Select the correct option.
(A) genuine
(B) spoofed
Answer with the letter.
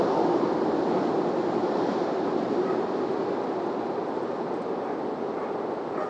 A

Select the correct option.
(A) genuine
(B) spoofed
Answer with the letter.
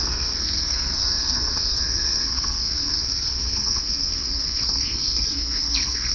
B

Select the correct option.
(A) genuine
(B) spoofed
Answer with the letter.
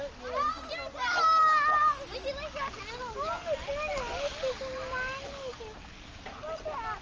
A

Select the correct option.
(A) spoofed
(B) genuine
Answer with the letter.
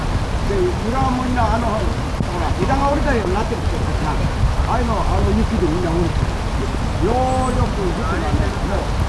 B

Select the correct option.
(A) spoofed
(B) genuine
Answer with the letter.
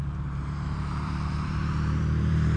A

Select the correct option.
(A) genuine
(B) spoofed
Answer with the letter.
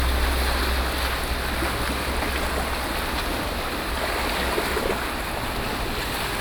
A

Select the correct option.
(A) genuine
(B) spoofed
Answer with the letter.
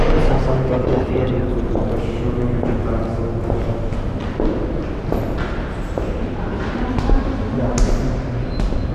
A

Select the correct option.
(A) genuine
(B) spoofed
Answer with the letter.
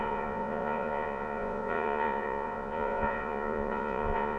B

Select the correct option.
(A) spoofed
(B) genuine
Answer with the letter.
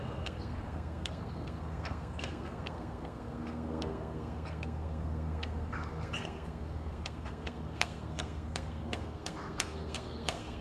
A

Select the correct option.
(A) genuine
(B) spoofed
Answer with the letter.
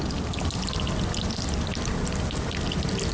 A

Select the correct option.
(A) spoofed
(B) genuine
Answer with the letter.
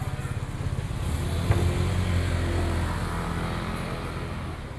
B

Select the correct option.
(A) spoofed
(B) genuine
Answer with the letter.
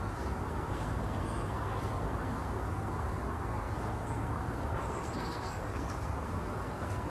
A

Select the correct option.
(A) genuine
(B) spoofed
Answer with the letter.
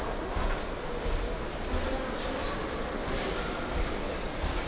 A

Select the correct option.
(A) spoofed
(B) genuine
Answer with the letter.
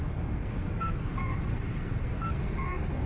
A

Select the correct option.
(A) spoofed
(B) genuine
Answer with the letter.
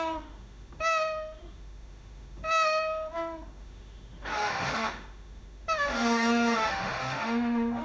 A